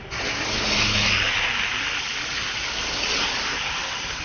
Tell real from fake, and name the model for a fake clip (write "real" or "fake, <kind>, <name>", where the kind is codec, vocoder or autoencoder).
real